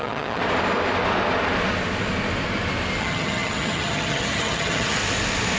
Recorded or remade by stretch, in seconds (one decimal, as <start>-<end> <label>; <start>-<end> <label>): 0.0-0.4 remade; 0.4-3.0 recorded; 3.0-5.0 remade; 5.0-5.6 recorded